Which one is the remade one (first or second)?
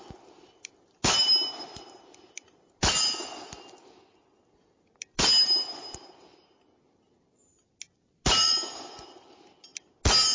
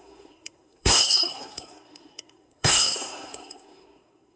second